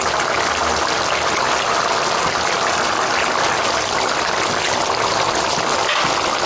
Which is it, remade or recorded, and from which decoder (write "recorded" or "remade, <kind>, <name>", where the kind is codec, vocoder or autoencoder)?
recorded